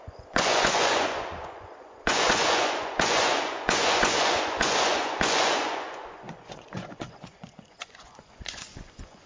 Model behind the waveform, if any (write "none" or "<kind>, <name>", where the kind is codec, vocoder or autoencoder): vocoder, Vocos